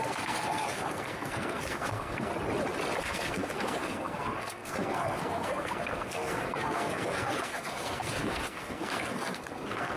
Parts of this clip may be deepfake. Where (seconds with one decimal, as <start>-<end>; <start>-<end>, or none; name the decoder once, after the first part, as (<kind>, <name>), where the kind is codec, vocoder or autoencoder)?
0.0-2.3 (codec, SNAC); 3.0-10.0